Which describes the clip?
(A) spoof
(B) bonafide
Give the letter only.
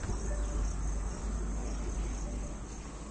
B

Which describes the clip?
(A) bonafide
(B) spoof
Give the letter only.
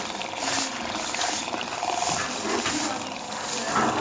A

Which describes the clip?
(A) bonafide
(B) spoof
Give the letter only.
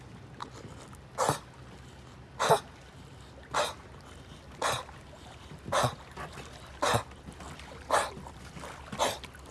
A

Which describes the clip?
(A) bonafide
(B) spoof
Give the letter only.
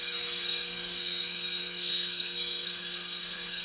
B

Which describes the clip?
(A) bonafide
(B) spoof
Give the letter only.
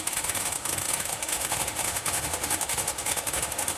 B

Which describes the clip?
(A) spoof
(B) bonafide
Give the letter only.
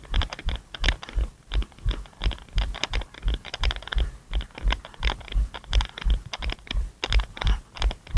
A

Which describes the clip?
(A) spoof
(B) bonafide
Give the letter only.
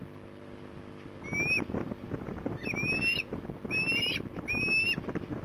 B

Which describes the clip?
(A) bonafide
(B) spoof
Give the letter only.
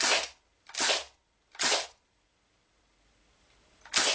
A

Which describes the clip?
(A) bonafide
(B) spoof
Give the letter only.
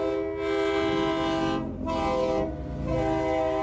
A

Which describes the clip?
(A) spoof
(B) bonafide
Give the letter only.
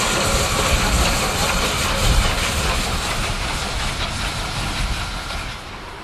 B